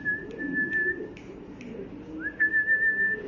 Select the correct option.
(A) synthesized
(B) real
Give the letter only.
B